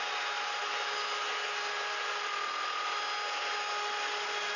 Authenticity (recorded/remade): recorded